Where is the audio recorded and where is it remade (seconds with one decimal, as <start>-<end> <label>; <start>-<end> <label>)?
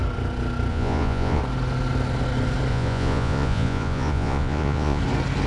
0.0-0.7 recorded; 0.7-1.4 remade; 1.4-2.7 recorded; 2.7-5.0 remade; 5.0-5.5 recorded